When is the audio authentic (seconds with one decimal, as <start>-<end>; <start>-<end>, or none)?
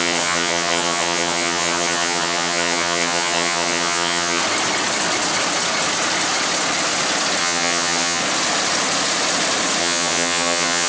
4.4-7.4; 8.2-9.8